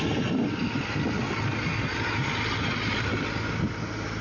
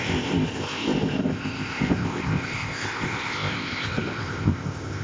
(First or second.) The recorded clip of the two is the first